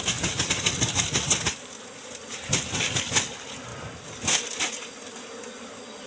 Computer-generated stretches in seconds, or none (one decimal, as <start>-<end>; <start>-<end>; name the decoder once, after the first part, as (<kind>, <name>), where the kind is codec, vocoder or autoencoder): none